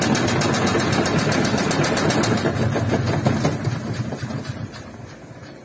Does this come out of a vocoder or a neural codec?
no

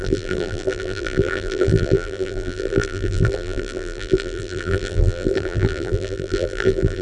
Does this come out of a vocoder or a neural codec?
yes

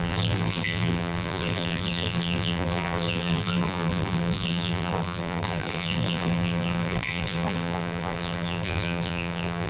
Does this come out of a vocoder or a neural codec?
yes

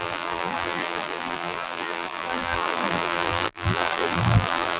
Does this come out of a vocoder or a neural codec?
yes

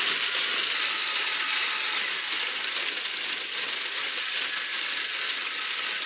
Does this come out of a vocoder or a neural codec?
no